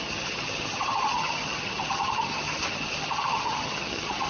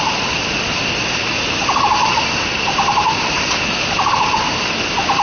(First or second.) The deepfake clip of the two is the first